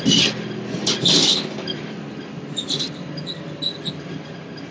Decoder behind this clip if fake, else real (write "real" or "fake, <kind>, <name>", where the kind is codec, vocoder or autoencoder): real